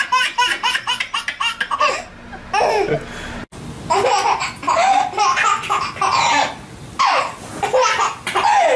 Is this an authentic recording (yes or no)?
yes